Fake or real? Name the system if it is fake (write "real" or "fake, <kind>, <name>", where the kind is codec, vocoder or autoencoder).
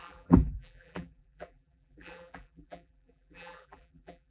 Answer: fake, vocoder, BigVGAN v2